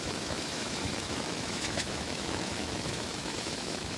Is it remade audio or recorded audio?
remade